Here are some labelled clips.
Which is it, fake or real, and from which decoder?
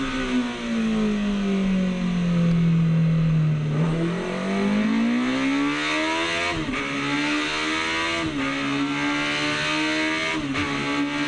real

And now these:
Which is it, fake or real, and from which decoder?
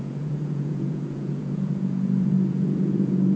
fake, vocoder, Vocos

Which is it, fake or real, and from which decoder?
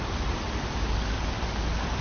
real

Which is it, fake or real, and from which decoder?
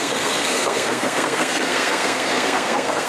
fake, codec, SNAC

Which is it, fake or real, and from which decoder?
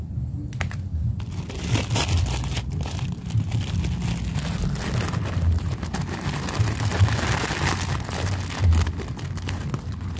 real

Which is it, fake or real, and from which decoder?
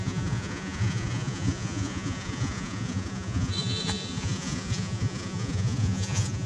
fake, vocoder, Vocos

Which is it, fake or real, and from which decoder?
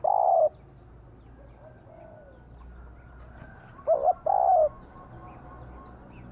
real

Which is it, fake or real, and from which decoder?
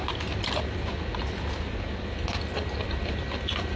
real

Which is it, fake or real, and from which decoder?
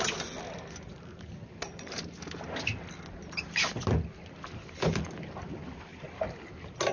real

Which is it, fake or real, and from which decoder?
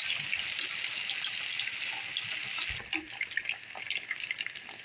real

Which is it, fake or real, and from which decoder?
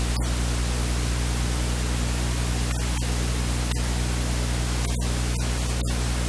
real